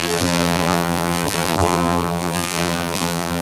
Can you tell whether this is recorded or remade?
remade